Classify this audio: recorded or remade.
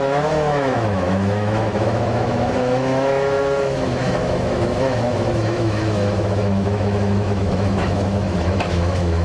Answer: remade